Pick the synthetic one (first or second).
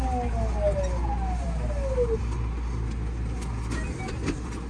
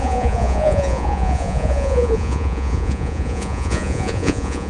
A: second